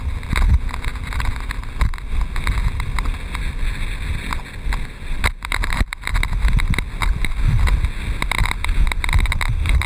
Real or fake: real